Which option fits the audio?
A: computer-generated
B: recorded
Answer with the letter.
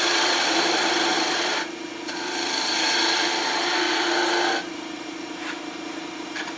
A